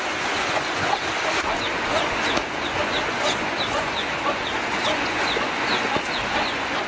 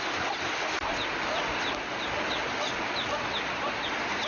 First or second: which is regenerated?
first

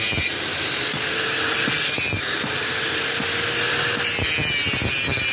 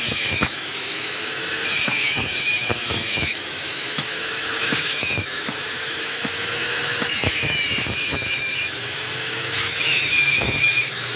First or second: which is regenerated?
second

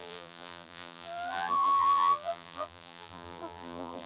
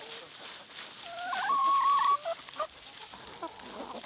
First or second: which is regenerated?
first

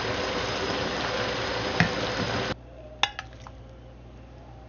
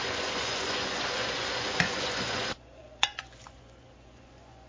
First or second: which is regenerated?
second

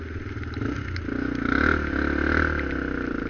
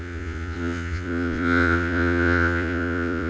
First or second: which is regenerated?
second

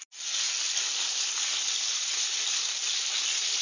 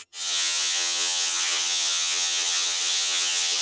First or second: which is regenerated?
second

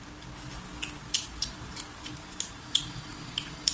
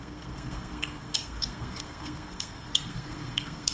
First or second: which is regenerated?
second